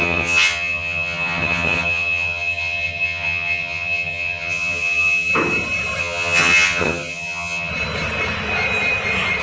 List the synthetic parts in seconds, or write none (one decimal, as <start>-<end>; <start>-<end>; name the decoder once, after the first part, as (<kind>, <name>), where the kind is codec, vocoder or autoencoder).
0.0-5.3 (vocoder, HiFi-GAN); 6.0-7.7